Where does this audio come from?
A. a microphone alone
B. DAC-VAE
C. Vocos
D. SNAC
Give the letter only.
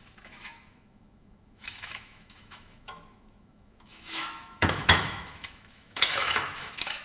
B